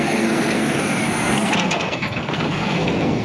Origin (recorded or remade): remade